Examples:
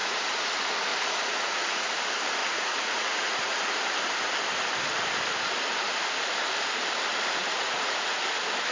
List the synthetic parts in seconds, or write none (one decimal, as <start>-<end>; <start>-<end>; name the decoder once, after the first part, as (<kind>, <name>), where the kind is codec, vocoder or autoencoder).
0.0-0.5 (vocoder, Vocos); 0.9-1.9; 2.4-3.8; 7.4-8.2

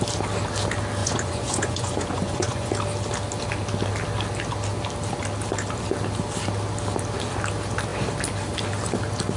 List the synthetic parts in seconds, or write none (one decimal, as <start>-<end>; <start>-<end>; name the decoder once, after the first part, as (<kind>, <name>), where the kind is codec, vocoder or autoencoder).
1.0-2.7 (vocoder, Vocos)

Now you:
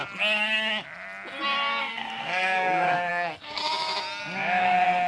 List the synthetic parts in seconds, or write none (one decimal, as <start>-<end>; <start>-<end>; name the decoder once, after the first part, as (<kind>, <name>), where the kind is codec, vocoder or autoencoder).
1.8-3.6 (codec, SNAC); 4.6-5.1

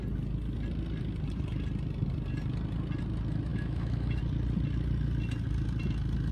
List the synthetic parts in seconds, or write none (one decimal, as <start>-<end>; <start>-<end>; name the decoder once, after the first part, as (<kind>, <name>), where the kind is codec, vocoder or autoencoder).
3.5-4.2 (autoencoder, DAC-VAE)